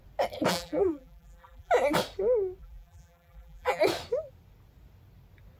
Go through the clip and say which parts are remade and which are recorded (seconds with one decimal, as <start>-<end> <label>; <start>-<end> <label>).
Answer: 0.0-0.5 recorded; 0.5-1.7 remade; 1.7-2.6 recorded; 2.6-3.8 remade; 3.8-5.6 recorded